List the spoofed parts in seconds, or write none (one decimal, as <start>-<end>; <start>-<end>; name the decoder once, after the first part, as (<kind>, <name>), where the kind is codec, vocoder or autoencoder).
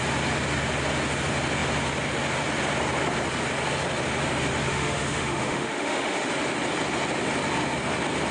4.7-6.3 (autoencoder, DAC-VAE)